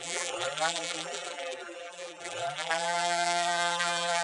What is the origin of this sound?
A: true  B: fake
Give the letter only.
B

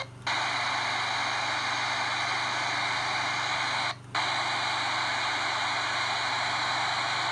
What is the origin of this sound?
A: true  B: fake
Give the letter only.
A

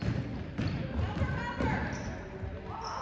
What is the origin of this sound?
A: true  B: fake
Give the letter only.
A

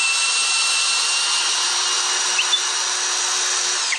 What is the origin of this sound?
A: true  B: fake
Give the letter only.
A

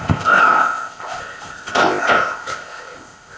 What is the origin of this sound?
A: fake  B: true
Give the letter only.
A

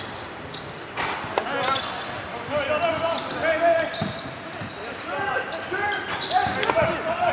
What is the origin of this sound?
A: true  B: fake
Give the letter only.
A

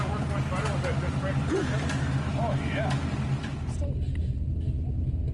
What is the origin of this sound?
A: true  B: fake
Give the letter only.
A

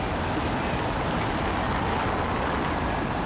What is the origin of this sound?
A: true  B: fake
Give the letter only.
A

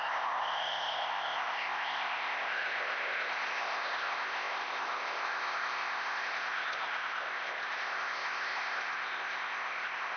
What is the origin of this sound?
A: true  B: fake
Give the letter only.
B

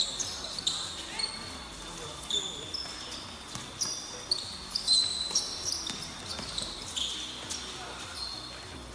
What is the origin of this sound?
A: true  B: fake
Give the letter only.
A